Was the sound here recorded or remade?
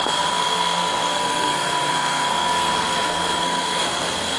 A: remade